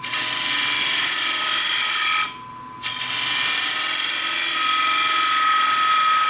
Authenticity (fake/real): real